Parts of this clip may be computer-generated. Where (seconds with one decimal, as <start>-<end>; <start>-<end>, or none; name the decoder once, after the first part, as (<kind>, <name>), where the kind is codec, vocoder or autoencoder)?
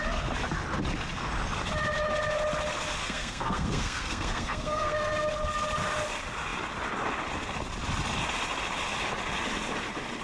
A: 3.0-5.3 (codec, SNAC)